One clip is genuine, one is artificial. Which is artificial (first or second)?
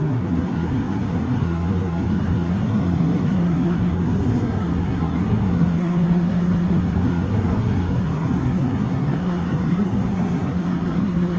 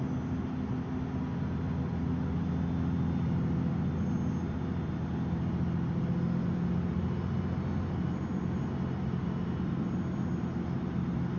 first